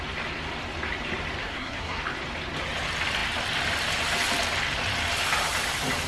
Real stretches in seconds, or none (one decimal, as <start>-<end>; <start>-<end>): 0.0-1.4; 2.0-6.1